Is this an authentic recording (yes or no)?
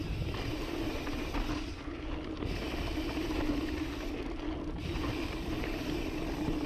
yes